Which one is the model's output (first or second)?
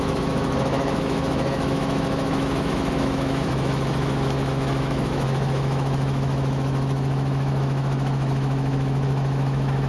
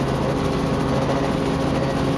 first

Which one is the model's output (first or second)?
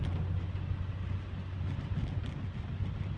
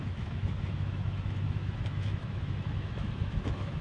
second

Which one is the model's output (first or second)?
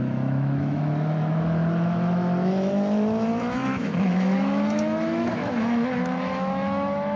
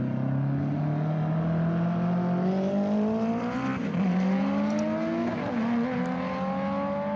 first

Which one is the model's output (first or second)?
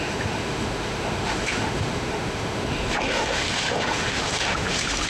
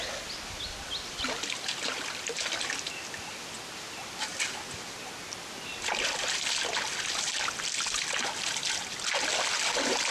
first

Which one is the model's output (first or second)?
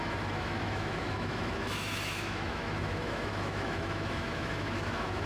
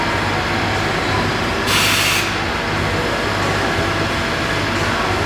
first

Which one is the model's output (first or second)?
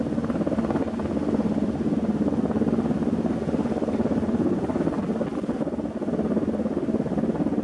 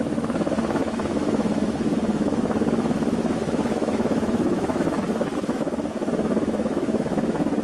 second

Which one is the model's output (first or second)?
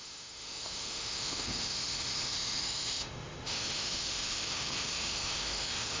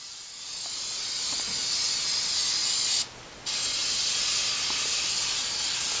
first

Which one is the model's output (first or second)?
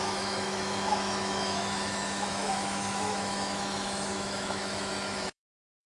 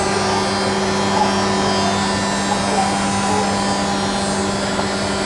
first